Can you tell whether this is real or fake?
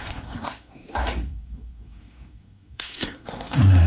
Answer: fake